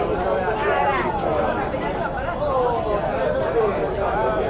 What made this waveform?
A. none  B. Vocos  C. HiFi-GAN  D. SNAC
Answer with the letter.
A